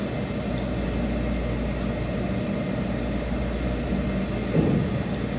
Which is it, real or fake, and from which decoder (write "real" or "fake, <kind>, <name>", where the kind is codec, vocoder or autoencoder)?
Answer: real